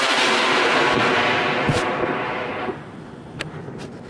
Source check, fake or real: real